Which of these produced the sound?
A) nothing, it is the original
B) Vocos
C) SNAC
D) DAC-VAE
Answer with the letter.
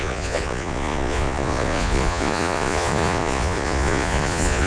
B